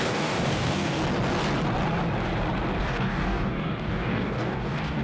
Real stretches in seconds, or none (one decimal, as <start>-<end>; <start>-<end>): 1.0-2.8